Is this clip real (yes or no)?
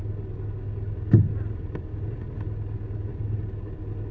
yes